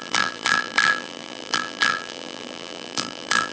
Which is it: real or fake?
fake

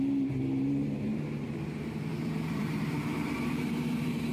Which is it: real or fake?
fake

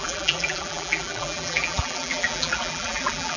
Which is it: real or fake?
fake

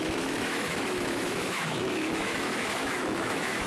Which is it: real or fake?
fake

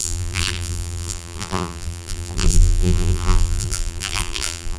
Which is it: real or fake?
fake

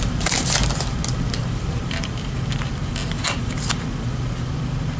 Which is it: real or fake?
real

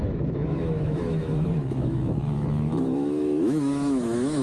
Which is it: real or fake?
fake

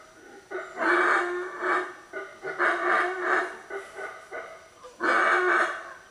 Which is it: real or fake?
real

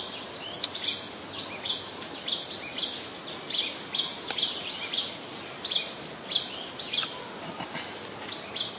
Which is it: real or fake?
real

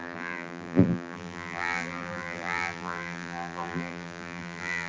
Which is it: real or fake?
fake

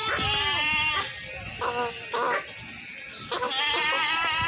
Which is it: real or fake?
real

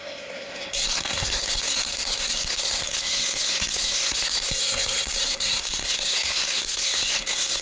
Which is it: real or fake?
fake